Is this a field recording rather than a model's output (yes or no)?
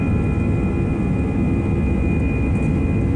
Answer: yes